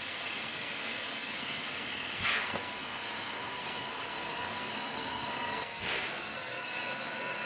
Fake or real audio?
fake